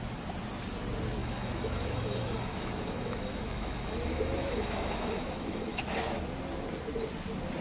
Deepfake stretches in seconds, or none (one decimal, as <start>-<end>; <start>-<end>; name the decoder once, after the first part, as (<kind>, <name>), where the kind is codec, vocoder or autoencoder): 1.2-5.8 (autoencoder, DAC-VAE)